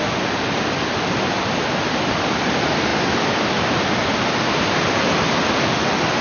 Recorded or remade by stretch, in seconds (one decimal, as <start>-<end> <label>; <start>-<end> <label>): 0.0-6.2 recorded